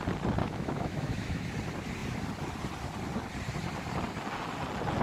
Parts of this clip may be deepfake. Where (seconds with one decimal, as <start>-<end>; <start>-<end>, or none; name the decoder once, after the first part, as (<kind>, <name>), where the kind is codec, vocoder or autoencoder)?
0.4-1.4 (autoencoder, DAC-VAE)